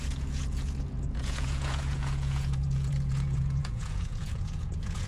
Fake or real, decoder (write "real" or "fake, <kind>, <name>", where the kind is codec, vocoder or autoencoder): fake, vocoder, Vocos